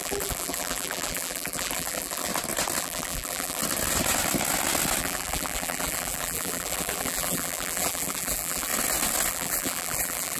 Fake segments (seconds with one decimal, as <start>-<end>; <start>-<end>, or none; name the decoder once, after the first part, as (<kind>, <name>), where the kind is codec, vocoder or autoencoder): 0.0-2.3 (vocoder, BigVGAN v2); 2.8-3.6; 5.0-8.7; 9.3-10.4